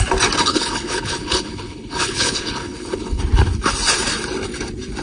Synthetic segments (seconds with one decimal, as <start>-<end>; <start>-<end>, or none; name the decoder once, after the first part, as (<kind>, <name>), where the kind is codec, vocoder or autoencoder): 0.5-3.2 (codec, HILCodec)